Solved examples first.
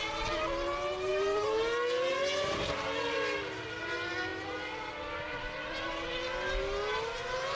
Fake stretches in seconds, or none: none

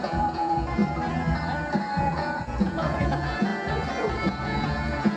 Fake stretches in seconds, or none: 0.0-0.8 (vocoder, Vocos); 2.0-3.5; 4.4-5.2

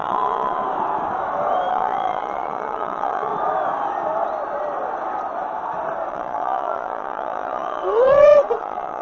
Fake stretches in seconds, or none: 0.0-0.6 (vocoder, Vocos); 1.7-3.3; 6.1-9.0

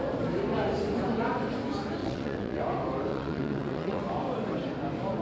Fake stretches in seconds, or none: 2.0-2.6 (vocoder, WaveNeXt); 3.1-4.0

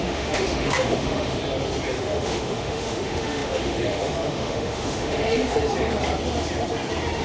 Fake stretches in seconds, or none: 0.0-1.4 (autoencoder, DAC-VAE); 2.0-5.6

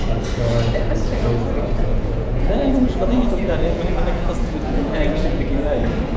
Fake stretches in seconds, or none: 1.9-5.6 (vocoder, Vocos)

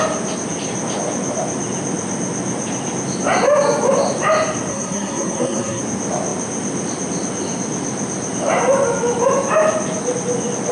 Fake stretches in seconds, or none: 4.7-5.8 (codec, SNAC)

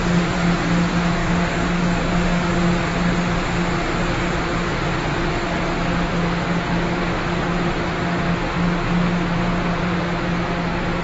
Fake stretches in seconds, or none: 1.2-2.5 (codec, DAC)